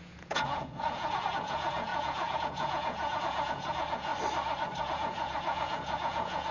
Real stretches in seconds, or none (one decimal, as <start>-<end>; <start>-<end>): 4.1-4.8